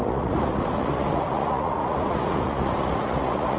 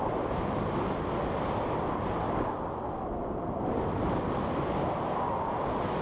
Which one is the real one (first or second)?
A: second